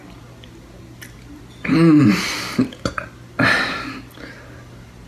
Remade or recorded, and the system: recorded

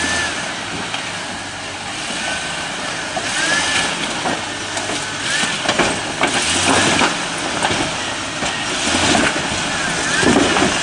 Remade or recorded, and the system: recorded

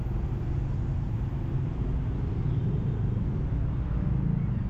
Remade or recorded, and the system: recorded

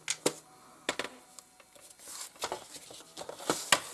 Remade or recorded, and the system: recorded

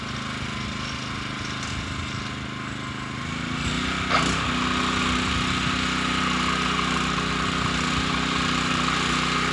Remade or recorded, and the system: recorded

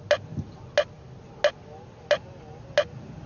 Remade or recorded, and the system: recorded